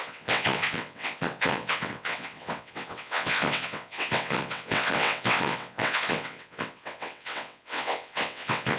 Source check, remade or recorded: remade